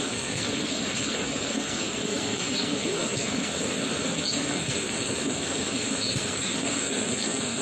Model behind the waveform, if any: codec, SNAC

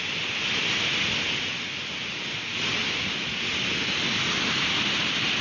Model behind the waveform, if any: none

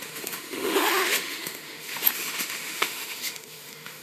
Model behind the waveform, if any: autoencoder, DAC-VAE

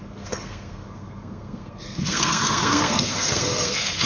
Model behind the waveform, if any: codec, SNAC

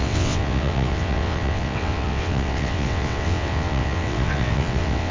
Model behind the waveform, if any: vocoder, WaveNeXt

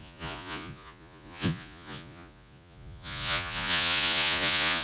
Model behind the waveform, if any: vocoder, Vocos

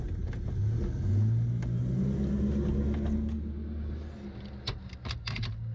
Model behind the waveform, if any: none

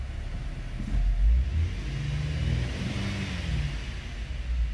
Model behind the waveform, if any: none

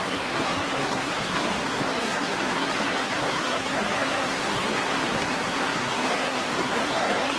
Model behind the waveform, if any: codec, SNAC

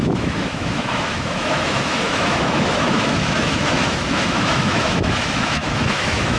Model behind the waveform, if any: autoencoder, DAC-VAE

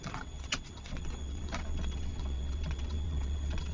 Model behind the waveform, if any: vocoder, WaveNeXt